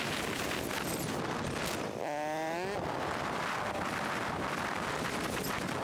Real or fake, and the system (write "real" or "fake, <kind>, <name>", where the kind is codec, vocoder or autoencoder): real